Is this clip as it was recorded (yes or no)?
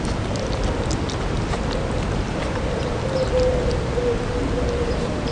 yes